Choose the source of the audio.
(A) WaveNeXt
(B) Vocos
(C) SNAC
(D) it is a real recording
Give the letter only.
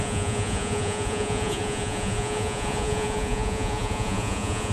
B